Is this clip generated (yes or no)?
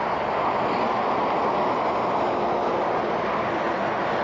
no